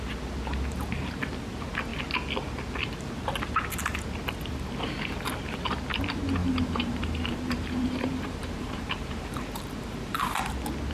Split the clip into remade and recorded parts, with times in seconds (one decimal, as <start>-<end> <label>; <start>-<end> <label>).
0.0-6.4 recorded; 6.4-10.5 remade; 10.5-10.9 recorded